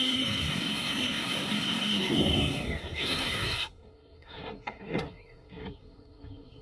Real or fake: fake